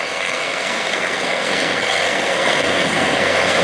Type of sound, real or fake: fake